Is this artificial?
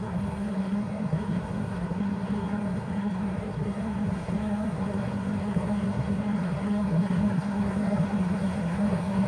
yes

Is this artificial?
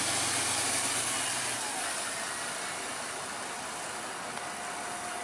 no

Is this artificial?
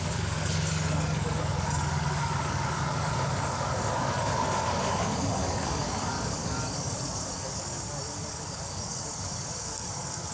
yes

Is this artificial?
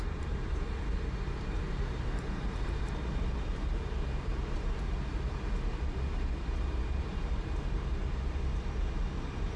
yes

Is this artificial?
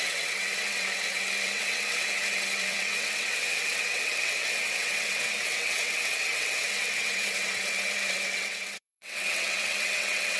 yes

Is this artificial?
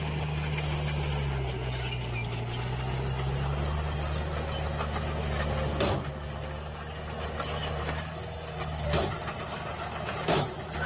no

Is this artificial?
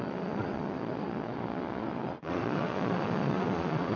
yes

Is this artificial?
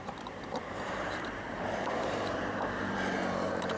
yes